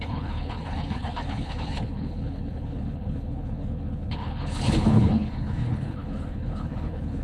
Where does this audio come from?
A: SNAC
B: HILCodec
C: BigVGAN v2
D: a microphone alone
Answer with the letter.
B